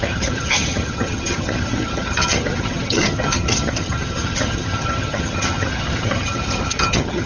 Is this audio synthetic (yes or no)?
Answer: yes